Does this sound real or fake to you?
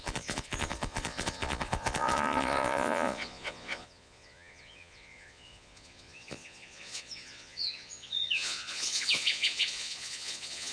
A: fake